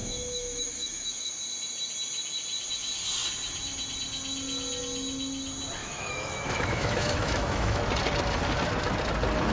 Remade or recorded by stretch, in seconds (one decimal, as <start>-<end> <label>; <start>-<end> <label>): 0.0-1.3 remade; 1.3-5.8 recorded; 5.8-7.8 remade; 7.8-9.5 recorded